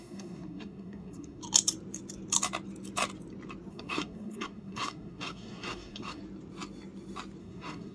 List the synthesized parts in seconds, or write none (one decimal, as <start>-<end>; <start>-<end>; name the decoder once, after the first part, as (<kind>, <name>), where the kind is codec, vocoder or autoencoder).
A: 0.0-1.4 (codec, SNAC); 3.7-6.2; 7.4-7.9